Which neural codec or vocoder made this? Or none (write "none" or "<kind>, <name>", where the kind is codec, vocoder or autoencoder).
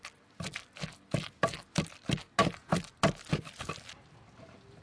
none